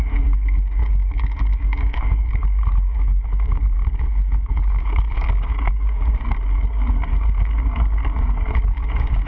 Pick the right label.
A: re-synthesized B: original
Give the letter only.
A